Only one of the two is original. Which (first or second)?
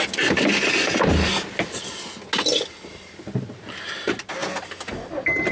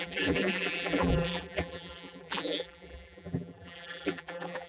first